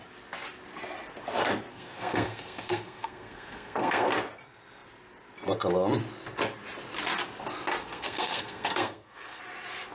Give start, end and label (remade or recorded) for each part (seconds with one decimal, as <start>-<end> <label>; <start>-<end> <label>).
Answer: 0.0-1.7 recorded; 1.7-4.1 remade; 4.1-7.8 recorded; 7.8-9.4 remade; 9.4-9.9 recorded